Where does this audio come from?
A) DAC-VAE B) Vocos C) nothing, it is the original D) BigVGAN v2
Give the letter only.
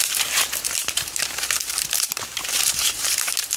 D